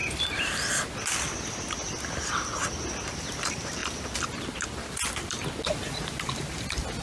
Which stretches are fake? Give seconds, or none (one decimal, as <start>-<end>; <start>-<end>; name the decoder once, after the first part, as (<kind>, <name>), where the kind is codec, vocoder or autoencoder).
0.0-0.7 (vocoder, BigVGAN v2)